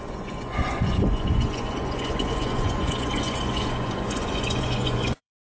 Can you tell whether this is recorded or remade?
remade